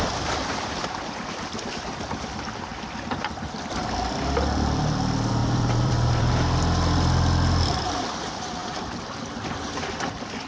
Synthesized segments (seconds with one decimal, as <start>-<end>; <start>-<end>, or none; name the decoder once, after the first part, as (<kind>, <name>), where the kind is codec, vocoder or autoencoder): 5.4-6.3 (vocoder, BigVGAN v2)